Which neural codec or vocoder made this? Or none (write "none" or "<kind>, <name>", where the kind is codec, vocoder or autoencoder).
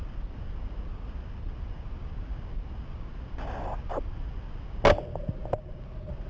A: none